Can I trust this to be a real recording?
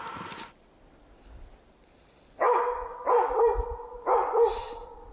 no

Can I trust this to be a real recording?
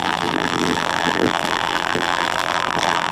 no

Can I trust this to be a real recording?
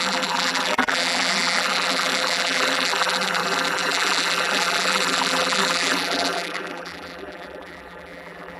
no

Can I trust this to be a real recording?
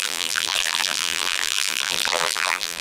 no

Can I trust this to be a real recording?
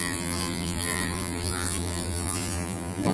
no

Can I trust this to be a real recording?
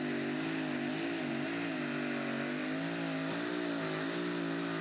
yes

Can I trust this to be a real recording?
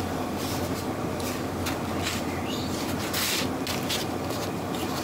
yes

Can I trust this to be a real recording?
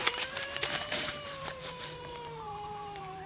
no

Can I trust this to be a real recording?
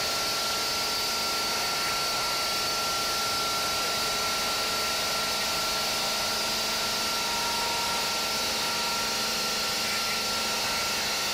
yes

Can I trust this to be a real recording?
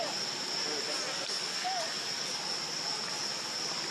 no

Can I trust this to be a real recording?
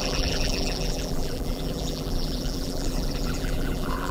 no